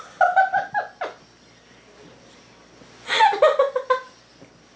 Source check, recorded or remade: recorded